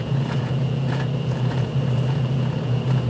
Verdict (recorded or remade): remade